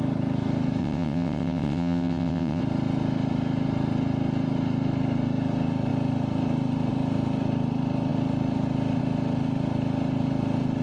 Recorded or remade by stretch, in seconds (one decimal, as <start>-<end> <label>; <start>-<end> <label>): 0.0-0.8 recorded; 0.8-2.6 remade; 2.6-10.8 recorded